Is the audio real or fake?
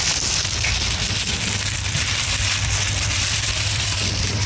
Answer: fake